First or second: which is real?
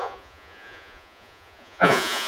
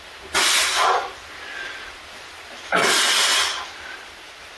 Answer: second